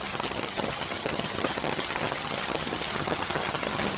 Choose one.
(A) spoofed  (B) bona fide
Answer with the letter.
A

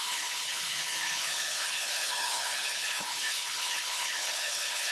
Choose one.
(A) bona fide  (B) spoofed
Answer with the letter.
B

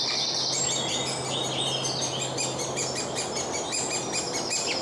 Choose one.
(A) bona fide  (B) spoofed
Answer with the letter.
A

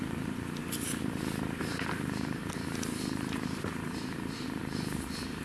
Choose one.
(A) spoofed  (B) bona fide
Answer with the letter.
A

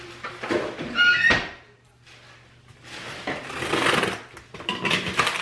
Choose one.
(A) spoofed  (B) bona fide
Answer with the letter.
B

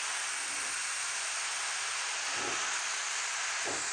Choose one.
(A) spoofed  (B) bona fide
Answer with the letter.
B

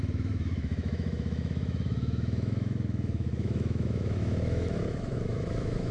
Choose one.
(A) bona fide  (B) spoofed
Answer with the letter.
B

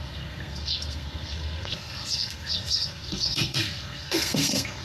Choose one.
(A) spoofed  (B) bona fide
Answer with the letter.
A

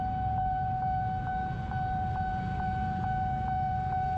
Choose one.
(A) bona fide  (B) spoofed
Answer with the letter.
B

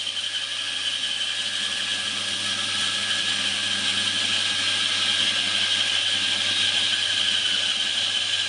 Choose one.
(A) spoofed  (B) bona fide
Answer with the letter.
B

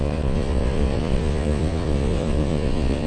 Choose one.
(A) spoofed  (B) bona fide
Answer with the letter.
A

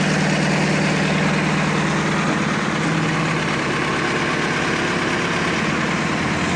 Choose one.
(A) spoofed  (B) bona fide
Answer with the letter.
B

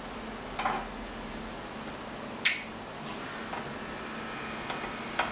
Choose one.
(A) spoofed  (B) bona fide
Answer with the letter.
B